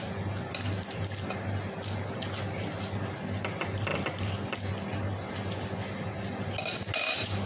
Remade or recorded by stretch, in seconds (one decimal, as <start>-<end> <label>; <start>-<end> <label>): 0.0-7.5 recorded